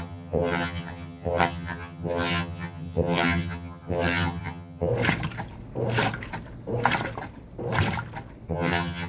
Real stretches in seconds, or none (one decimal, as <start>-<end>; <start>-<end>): 4.9-8.5